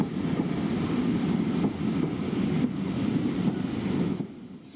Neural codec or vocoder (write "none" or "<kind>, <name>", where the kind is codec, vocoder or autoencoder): none